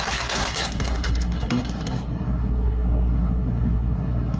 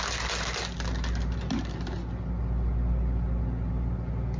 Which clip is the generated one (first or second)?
first